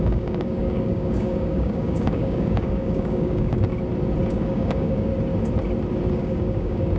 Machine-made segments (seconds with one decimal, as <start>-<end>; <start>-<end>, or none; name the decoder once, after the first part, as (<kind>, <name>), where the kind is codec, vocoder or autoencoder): 0.0-3.7 (codec, DAC); 4.3-5.1; 6.1-7.0